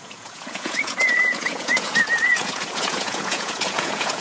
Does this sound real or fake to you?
fake